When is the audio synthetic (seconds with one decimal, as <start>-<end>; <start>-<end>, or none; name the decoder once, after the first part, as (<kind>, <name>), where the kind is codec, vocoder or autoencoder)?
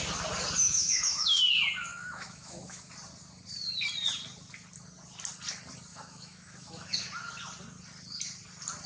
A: 0.6-1.4 (autoencoder, DAC-VAE); 1.9-2.9; 5.9-7.0